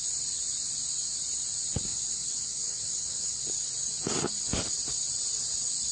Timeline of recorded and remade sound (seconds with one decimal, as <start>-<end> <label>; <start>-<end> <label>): 0.0-1.9 recorded; 1.9-3.4 remade; 3.4-5.9 recorded